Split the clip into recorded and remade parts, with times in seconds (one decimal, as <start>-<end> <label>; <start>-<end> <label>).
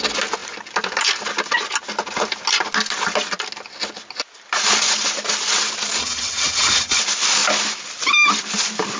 0.0-6.0 recorded; 6.0-7.0 remade; 7.0-9.0 recorded